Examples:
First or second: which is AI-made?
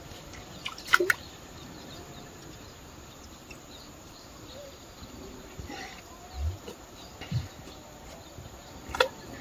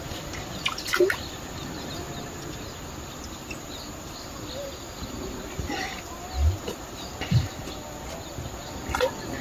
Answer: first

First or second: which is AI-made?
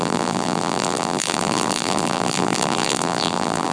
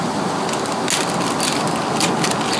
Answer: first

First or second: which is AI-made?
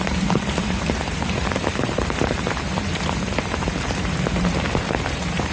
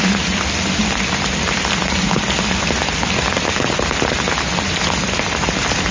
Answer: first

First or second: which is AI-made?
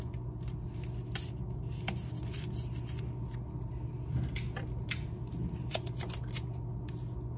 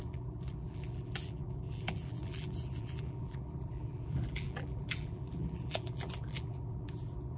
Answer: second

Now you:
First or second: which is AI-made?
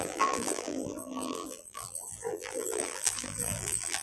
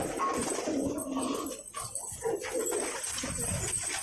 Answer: first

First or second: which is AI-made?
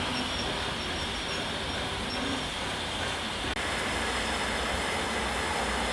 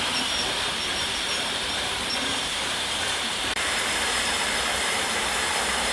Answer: second